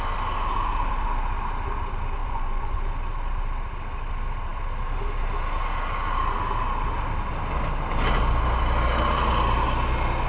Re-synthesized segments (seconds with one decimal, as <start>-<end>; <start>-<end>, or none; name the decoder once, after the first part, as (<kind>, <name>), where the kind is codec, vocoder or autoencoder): 2.2-2.8 (vocoder, Vocos)